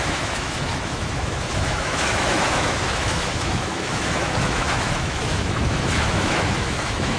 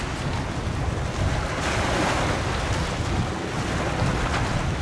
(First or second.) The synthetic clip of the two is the first